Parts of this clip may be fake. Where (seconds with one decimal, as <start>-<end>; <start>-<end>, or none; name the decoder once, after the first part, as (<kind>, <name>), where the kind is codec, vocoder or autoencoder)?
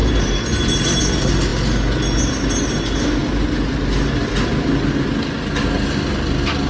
none